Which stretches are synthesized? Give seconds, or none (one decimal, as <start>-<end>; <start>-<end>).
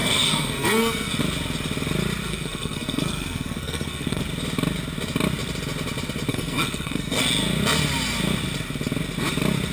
0.0-1.2; 2.2-4.2; 6.3-7.2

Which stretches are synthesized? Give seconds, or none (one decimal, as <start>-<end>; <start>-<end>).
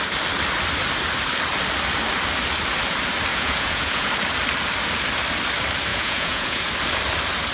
3.3-4.1; 5.9-6.7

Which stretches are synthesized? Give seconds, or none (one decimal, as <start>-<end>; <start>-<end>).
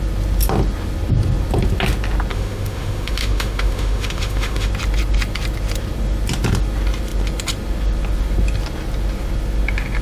2.3-4.7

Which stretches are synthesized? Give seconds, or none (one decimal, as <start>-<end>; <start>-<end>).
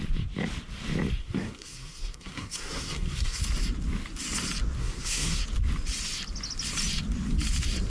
1.2-3.4; 4.8-5.4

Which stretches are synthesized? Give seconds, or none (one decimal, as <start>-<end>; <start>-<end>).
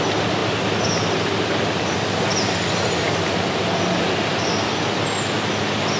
none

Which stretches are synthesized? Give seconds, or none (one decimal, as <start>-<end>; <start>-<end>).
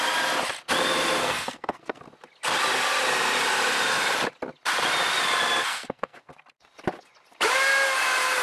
1.2-2.0; 5.6-6.3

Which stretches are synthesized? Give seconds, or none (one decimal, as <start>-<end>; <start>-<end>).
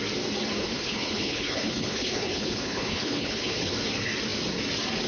0.6-3.7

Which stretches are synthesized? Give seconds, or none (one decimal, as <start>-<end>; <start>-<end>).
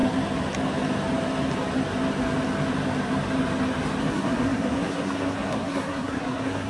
4.0-6.7